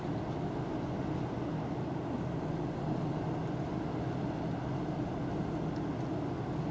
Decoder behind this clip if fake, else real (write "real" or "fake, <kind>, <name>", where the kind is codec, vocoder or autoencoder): real